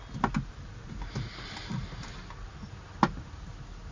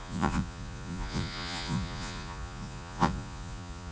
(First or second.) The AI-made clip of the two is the second